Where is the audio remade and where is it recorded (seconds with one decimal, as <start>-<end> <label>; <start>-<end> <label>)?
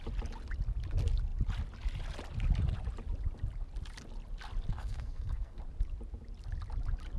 0.0-4.7 recorded; 4.7-5.6 remade; 5.6-7.2 recorded